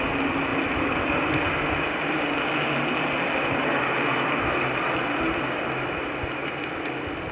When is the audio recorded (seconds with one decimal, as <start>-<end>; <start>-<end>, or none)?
0.0-7.3